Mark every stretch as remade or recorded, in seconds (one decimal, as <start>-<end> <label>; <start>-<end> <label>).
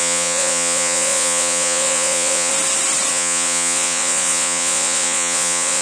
0.0-2.5 remade; 2.5-3.1 recorded; 3.1-5.8 remade